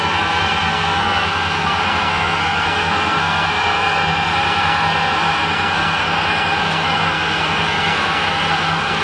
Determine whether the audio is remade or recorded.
remade